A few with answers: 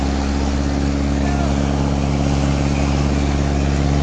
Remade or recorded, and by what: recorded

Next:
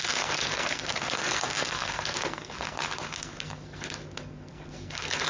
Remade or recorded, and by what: remade, codec, SNAC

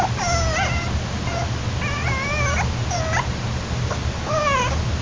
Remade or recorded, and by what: recorded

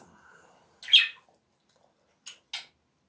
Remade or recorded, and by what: recorded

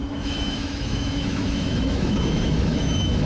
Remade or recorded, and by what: remade, autoencoder, DAC-VAE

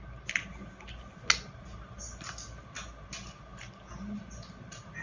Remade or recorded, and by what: recorded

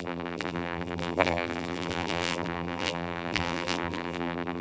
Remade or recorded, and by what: remade, vocoder, BigVGAN v2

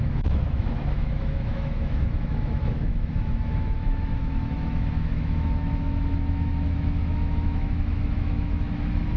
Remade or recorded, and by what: remade, autoencoder, DAC-VAE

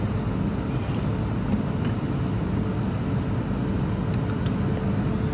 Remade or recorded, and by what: recorded